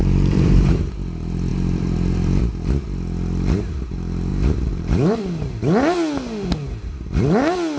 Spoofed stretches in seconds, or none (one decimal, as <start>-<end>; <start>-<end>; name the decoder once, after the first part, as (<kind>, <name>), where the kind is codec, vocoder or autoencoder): 0.0-0.8 (vocoder, BigVGAN v2); 1.5-2.4; 4.3-5.2